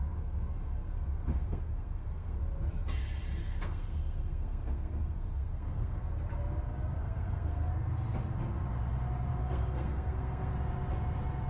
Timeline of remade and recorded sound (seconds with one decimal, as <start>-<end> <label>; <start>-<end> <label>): 0.0-2.4 remade; 2.4-3.4 recorded; 3.4-6.1 remade; 6.1-7.0 recorded; 7.0-7.7 remade; 7.7-9.4 recorded; 9.4-10.5 remade; 10.5-11.5 recorded